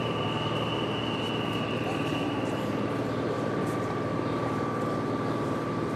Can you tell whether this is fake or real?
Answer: fake